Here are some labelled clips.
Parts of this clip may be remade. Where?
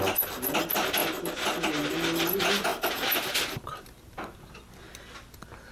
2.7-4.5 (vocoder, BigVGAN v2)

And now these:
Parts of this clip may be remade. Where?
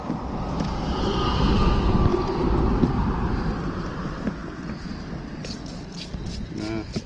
none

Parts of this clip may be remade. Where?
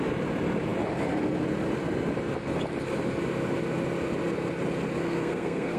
5.0-5.8 (codec, SNAC)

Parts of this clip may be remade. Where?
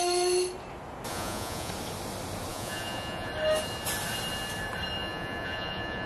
1.1-1.7 (vocoder, Vocos); 2.5-3.3; 5.0-6.1